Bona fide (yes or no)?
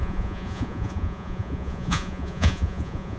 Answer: no